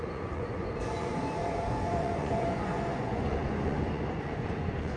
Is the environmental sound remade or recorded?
remade